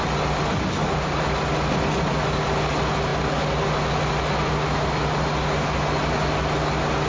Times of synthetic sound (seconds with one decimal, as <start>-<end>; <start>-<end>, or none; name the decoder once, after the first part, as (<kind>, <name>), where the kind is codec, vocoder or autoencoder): none